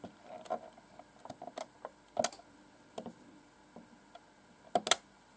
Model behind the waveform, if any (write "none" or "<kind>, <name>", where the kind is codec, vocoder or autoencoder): none